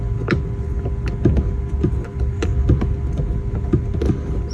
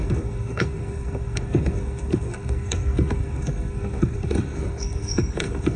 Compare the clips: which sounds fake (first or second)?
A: second